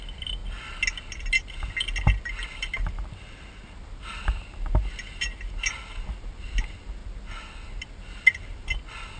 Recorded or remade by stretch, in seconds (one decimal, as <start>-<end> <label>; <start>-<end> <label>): 0.0-9.2 recorded